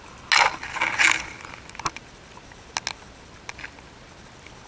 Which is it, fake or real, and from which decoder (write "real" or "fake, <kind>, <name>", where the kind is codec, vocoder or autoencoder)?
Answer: real